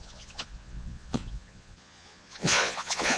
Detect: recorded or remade remade